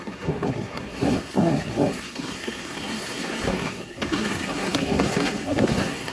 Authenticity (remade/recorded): remade